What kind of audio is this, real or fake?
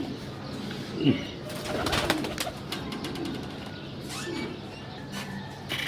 real